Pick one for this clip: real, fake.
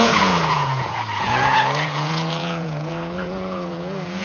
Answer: fake